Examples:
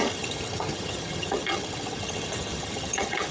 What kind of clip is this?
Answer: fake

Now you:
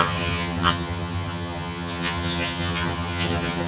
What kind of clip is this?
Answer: fake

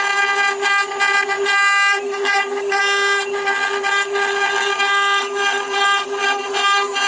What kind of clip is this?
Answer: real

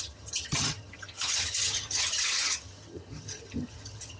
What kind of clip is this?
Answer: fake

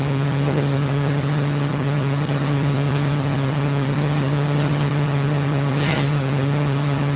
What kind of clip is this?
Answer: fake